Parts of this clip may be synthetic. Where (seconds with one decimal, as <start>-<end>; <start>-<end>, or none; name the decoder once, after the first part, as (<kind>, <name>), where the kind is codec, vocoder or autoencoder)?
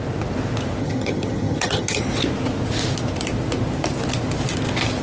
0.8-2.0 (vocoder, HiFi-GAN)